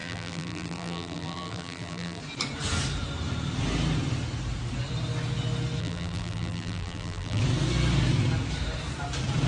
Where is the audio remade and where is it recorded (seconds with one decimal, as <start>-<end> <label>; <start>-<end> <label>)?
0.0-2.2 remade; 2.2-5.8 recorded; 5.8-7.4 remade; 7.4-9.5 recorded